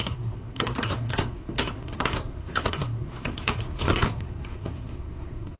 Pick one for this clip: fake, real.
fake